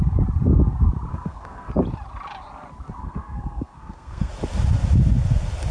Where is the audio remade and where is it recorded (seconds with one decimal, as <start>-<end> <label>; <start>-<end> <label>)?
0.0-1.1 recorded; 1.1-1.7 remade; 1.7-3.0 recorded; 3.0-4.3 remade; 4.3-5.7 recorded